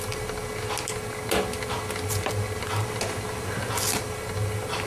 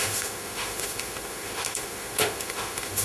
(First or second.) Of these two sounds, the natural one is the first